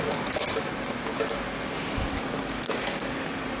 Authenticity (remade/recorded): recorded